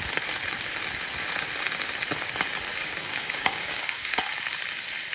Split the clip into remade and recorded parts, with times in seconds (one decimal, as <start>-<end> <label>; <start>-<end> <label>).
0.0-2.7 recorded; 2.7-4.2 remade; 4.2-5.1 recorded